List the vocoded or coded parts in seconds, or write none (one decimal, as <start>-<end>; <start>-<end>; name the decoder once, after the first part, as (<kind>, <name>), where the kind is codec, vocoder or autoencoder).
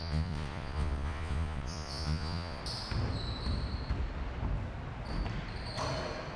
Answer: 0.0-2.6 (vocoder, Vocos)